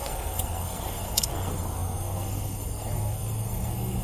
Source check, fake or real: fake